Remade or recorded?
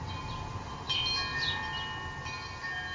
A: recorded